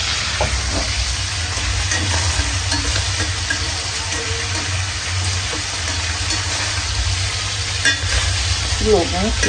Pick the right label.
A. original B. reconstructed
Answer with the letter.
A